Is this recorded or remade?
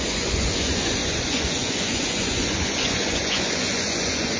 remade